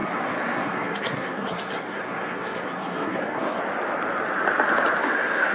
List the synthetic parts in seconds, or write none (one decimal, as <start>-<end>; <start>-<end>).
0.0-3.6; 5.0-5.5